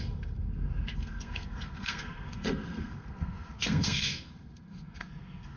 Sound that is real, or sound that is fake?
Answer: fake